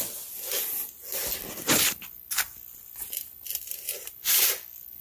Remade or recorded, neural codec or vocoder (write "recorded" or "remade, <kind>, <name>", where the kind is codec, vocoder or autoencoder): recorded